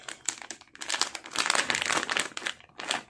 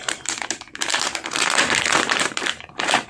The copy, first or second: second